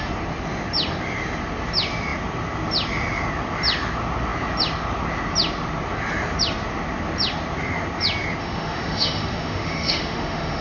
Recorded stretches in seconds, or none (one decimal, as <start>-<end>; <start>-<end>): 0.0-8.4